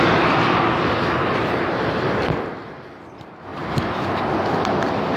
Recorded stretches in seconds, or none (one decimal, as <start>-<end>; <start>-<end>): 0.0-1.2; 2.2-3.5; 4.2-5.2